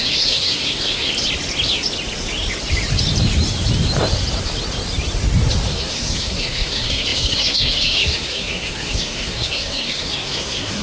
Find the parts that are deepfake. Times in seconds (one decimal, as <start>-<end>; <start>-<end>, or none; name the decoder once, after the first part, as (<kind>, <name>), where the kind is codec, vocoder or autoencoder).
0.0-1.1 (codec, SNAC); 5.7-10.8